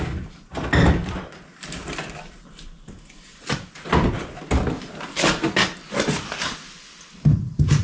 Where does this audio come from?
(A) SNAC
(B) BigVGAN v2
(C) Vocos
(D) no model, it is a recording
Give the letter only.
D